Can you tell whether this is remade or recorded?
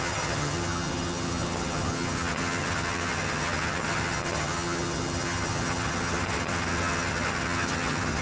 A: remade